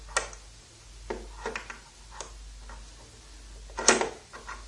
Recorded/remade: recorded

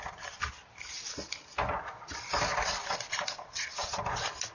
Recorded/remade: recorded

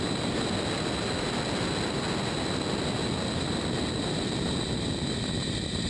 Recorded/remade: recorded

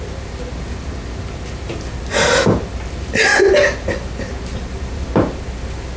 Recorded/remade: recorded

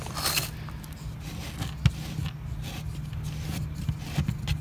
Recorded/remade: recorded